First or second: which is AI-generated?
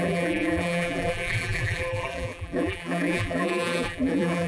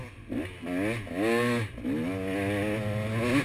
first